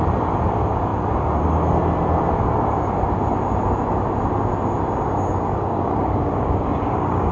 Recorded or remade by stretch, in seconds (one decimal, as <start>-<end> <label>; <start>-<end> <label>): 0.0-5.5 recorded; 5.5-7.3 remade